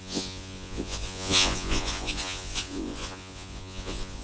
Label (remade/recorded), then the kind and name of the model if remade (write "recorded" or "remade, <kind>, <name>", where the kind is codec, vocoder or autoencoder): remade, vocoder, Vocos